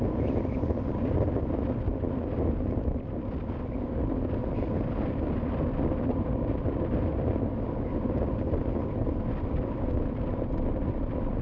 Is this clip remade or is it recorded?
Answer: recorded